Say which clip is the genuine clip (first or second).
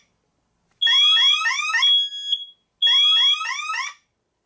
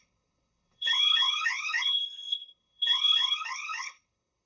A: first